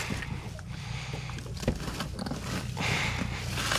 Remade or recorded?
recorded